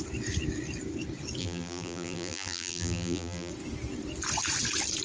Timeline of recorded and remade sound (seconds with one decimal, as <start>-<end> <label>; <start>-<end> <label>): 0.0-1.4 recorded; 1.4-3.5 remade; 3.5-5.0 recorded